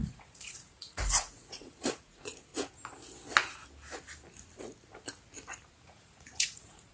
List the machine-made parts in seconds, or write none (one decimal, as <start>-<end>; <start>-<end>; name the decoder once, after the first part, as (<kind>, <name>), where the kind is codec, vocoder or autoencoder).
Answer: 0.0-2.5 (vocoder, Vocos); 5.7-6.9